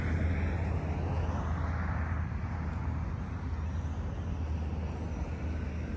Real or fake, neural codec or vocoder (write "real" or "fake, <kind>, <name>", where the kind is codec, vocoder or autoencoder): real